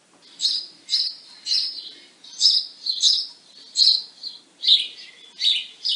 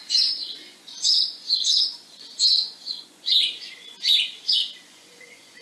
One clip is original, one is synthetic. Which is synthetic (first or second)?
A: second